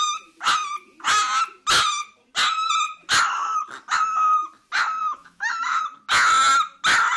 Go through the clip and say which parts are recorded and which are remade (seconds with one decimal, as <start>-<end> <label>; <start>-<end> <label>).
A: 0.0-5.0 recorded; 5.0-5.8 remade; 5.8-7.2 recorded